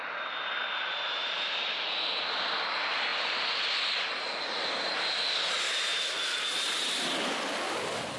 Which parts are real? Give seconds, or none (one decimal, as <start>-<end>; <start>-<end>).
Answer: 0.0-1.2; 1.8-8.2